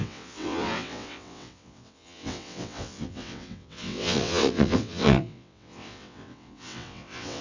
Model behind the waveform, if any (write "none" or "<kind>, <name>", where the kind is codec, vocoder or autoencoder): vocoder, WaveNeXt